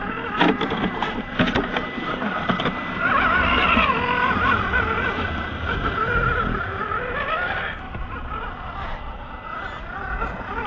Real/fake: real